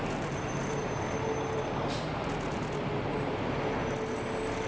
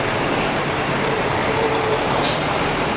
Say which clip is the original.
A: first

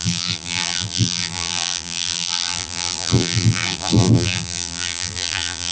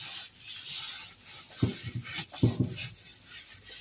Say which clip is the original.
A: second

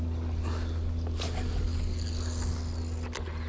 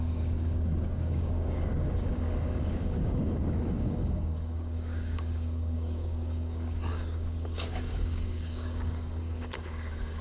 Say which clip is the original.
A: first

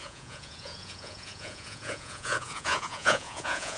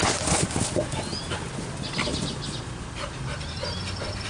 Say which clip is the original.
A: second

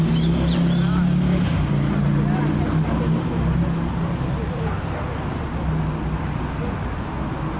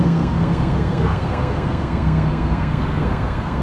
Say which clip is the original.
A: first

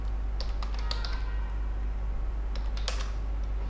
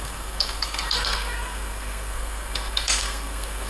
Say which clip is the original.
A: first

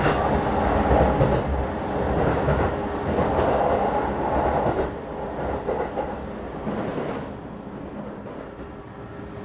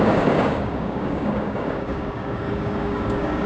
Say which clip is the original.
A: first